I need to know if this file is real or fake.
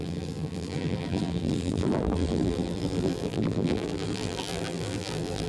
fake